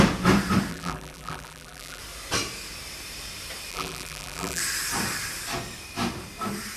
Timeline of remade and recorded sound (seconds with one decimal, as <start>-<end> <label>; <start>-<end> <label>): 0.0-0.7 recorded; 0.7-2.0 remade; 2.0-3.7 recorded; 3.7-4.6 remade; 4.6-6.8 recorded